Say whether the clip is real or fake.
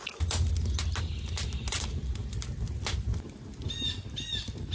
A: real